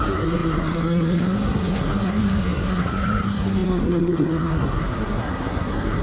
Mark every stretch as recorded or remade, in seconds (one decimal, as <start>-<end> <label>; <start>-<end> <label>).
0.0-6.0 remade